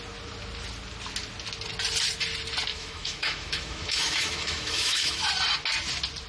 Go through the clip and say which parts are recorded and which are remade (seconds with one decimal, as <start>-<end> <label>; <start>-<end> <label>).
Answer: 0.0-2.7 recorded; 2.7-5.2 remade; 5.2-6.3 recorded